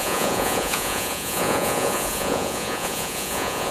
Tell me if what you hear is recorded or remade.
remade